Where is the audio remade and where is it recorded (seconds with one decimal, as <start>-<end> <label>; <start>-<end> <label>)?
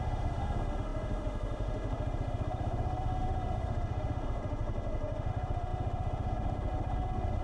0.0-7.4 remade